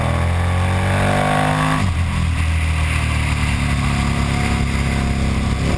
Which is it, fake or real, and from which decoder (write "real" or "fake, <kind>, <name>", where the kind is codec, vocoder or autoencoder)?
real